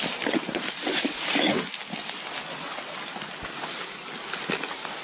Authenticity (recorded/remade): recorded